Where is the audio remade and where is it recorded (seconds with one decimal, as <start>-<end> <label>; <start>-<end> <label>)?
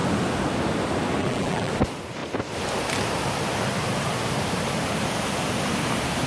0.0-1.2 recorded; 1.2-1.7 remade; 1.7-6.3 recorded